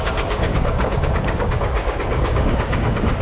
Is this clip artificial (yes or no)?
yes